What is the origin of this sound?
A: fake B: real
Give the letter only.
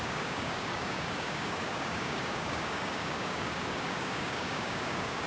A